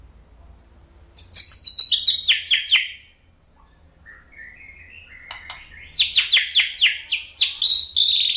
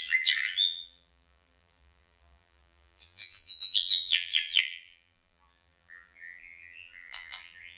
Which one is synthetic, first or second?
second